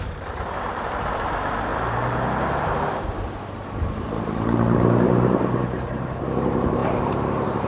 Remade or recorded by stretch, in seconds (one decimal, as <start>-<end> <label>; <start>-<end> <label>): 0.0-7.7 remade